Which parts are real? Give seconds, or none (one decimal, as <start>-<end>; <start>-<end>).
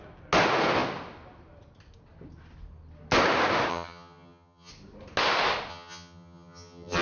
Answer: 0.0-3.7; 4.7-5.7